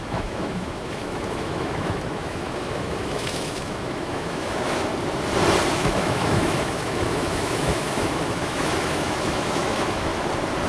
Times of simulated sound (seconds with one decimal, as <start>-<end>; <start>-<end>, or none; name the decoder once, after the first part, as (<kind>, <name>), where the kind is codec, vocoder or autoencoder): 0.0-4.9 (autoencoder, DAC-VAE); 5.7-10.1